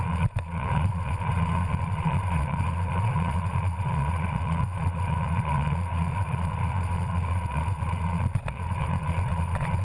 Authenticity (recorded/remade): remade